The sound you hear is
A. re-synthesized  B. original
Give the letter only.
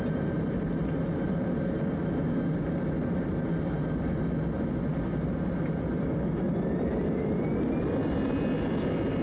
B